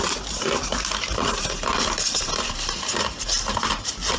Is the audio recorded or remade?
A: remade